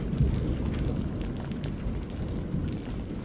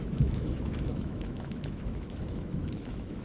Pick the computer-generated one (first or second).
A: second